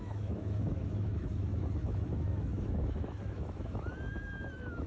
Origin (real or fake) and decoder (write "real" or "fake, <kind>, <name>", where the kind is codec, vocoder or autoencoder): fake, autoencoder, DAC-VAE